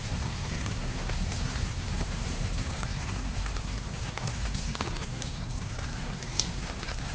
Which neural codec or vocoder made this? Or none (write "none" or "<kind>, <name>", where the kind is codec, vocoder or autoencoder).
codec, SNAC